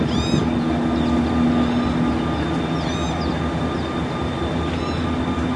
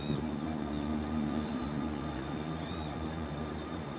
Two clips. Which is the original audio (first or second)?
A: first